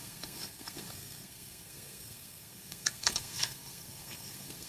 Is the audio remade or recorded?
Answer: remade